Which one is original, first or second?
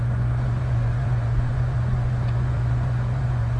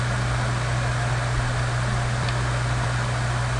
second